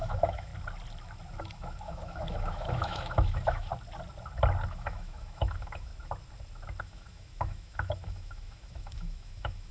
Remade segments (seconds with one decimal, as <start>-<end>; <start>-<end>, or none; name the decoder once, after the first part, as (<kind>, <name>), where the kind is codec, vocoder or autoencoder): 0.0-0.5 (autoencoder, DAC-VAE); 1.4-3.7; 4.7-5.9; 6.8-9.7